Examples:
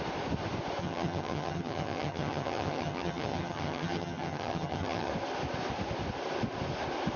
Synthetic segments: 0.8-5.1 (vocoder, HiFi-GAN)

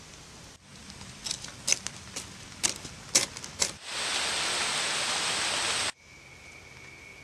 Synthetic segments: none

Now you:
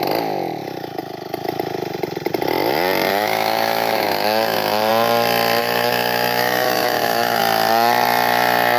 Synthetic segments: 3.1-4.9 (autoencoder, DAC-VAE); 5.6-7.4